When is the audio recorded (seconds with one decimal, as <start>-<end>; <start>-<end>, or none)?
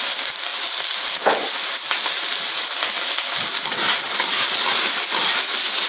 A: 0.0-5.9